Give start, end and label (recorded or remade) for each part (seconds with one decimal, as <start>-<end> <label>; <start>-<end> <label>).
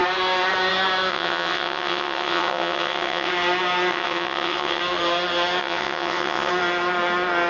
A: 0.0-1.1 recorded; 1.1-3.3 remade; 3.3-3.9 recorded; 3.9-4.8 remade; 4.8-5.6 recorded; 5.6-6.5 remade; 6.5-7.5 recorded